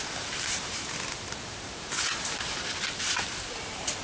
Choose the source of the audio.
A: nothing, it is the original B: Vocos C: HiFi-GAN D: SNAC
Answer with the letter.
A